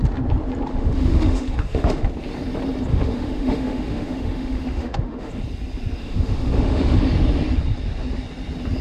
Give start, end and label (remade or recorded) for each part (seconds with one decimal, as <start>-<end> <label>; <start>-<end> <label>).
0.0-0.7 recorded; 0.7-2.1 remade; 2.1-2.9 recorded; 2.9-5.3 remade; 5.3-6.0 recorded; 6.0-7.0 remade; 7.0-8.8 recorded